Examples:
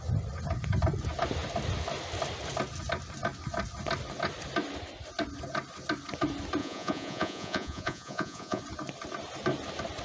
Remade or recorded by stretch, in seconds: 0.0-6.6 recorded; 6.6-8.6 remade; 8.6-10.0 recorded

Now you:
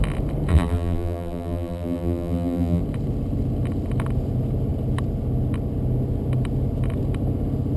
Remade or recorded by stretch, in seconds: 0.0-0.5 recorded; 0.5-2.8 remade; 2.8-7.8 recorded

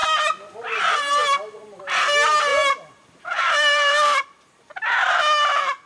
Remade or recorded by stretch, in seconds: 0.0-2.5 recorded; 2.5-4.7 remade; 4.7-5.9 recorded

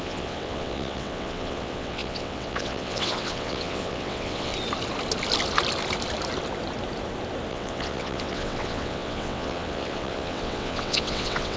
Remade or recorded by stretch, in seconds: 0.0-4.5 remade; 4.5-7.5 recorded; 7.5-11.6 remade

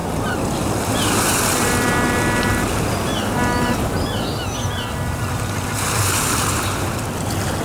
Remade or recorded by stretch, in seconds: 0.0-7.6 recorded

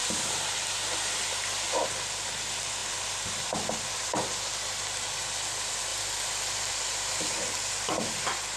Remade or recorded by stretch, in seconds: 0.0-0.7 remade; 0.7-2.8 recorded; 2.8-3.3 remade; 3.3-5.9 recorded; 5.9-7.9 remade; 7.9-8.6 recorded

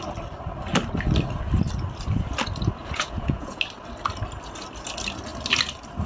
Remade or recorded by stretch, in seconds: 0.0-2.8 recorded; 2.8-3.6 remade; 3.6-6.1 recorded